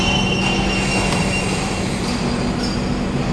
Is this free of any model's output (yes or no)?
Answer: yes